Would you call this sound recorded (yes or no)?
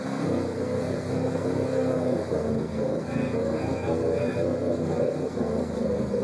no